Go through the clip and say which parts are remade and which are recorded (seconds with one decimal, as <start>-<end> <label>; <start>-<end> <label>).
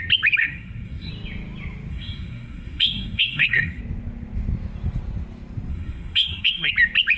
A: 0.0-0.4 recorded; 0.4-1.1 remade; 1.1-1.9 recorded; 1.9-3.8 remade; 3.8-5.7 recorded; 5.7-6.7 remade; 6.7-7.2 recorded